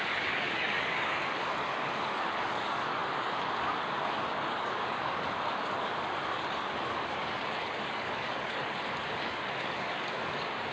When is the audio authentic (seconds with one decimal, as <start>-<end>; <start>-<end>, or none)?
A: none